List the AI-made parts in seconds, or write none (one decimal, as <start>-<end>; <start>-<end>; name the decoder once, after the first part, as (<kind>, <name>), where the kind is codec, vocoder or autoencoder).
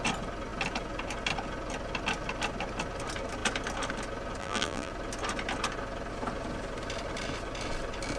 4.4-4.9 (vocoder, BigVGAN v2)